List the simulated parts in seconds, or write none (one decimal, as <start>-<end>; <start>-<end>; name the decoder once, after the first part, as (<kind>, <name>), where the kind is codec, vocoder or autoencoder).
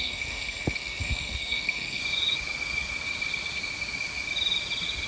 0.0-2.0 (codec, SNAC)